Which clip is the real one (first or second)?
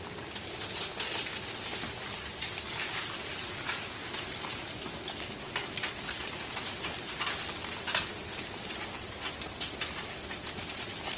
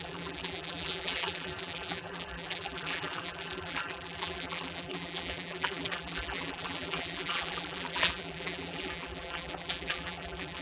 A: first